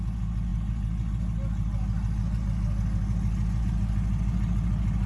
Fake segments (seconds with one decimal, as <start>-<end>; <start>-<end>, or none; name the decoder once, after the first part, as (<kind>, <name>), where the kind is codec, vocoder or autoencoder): none